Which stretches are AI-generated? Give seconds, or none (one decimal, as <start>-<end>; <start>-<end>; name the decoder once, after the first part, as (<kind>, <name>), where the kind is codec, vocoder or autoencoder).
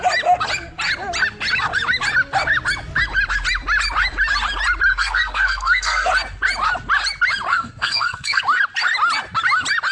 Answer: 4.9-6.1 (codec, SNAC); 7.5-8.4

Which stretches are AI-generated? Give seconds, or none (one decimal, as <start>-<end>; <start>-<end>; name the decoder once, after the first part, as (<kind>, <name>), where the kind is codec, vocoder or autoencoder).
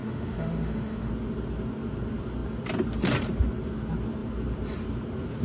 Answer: 0.0-1.1 (autoencoder, DAC-VAE)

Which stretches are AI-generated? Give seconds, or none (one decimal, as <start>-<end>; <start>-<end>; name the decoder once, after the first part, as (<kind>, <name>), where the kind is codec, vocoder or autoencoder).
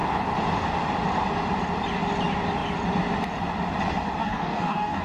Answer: 4.2-5.0 (codec, DAC)